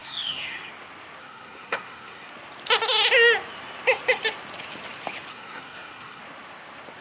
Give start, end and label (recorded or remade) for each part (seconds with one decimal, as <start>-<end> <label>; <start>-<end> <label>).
0.0-0.7 remade; 0.7-1.2 recorded; 1.2-2.3 remade; 2.3-5.3 recorded; 5.3-6.2 remade; 6.2-7.0 recorded